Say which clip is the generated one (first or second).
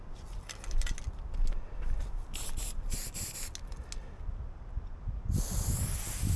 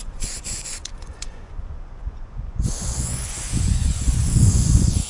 second